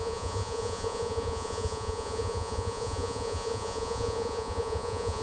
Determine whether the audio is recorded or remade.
remade